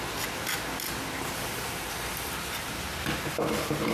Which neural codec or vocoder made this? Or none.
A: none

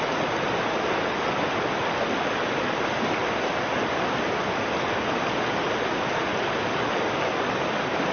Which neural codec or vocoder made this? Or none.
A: none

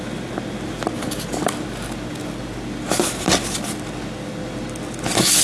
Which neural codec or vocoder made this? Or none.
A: none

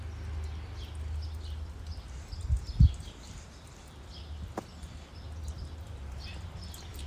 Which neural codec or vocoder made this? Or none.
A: none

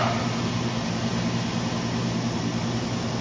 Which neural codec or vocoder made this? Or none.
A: none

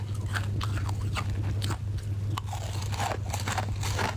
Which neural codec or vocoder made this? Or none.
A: none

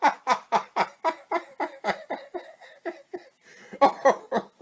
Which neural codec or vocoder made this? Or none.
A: none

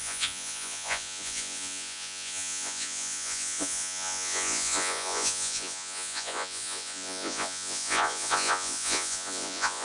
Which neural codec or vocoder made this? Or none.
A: vocoder, Vocos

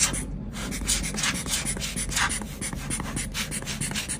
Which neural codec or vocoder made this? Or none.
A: none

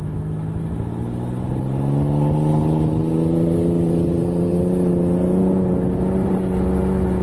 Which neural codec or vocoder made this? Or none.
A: none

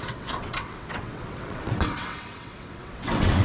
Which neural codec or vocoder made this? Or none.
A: vocoder, WaveNeXt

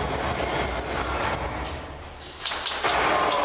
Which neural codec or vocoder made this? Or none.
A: none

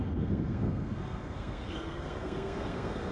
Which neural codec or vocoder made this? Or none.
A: codec, SNAC